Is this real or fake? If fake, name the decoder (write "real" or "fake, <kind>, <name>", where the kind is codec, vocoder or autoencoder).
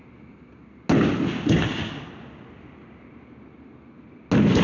real